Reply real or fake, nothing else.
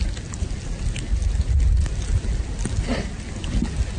real